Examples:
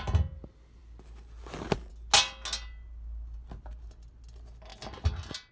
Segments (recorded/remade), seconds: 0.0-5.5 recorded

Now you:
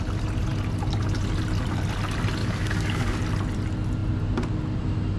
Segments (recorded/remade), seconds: 0.0-2.4 recorded; 2.4-3.2 remade; 3.2-5.2 recorded

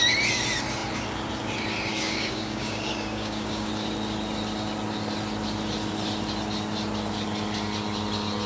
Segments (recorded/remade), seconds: 0.0-1.9 recorded; 1.9-3.7 remade; 3.7-8.5 recorded

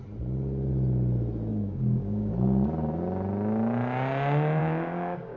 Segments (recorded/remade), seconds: 0.0-1.5 recorded; 1.5-2.3 remade; 2.3-4.6 recorded; 4.6-5.4 remade

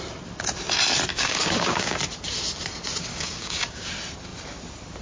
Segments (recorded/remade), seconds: 0.0-1.1 recorded; 1.1-2.0 remade; 2.0-3.1 recorded; 3.1-3.9 remade; 3.9-5.0 recorded

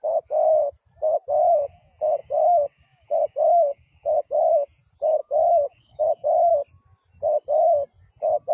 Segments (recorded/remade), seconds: 0.0-2.2 recorded; 2.2-4.5 remade; 4.5-5.2 recorded; 5.2-6.0 remade; 6.0-8.5 recorded